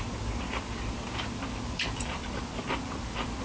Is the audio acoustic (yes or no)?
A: yes